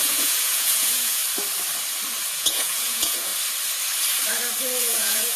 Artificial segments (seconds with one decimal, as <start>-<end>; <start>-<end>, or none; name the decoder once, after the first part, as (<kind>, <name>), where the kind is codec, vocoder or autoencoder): 0.0-1.2 (vocoder, Vocos); 2.3-3.3; 4.8-5.4